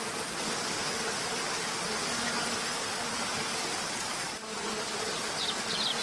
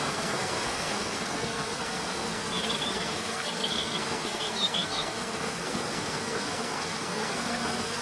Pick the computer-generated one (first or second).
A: second